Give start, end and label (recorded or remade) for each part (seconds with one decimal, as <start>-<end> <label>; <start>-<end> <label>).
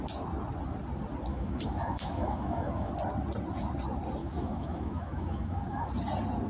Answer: 0.0-1.3 recorded; 1.3-2.9 remade; 2.9-4.2 recorded; 4.2-5.9 remade; 5.9-6.5 recorded